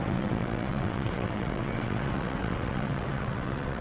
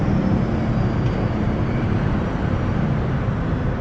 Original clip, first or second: second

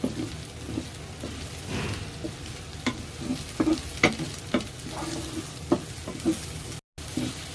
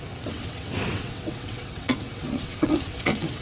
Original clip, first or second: first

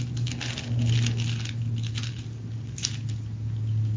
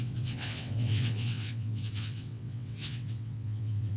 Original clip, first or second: first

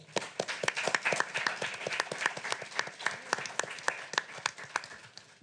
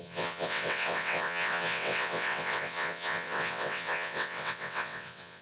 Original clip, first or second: first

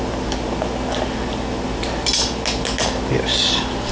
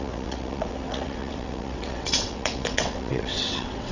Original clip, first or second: first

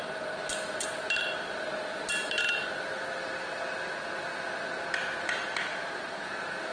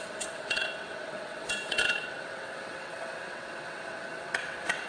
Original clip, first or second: first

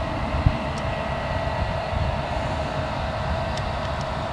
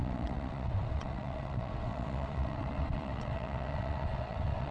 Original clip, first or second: first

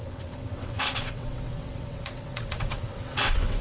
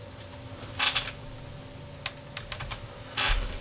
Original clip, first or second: second